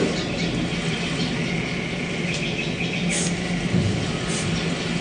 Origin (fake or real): real